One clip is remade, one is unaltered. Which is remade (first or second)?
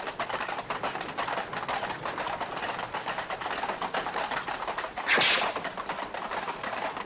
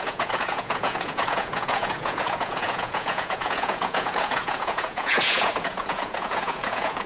second